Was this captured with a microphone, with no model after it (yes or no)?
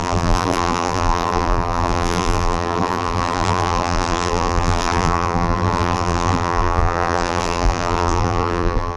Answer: no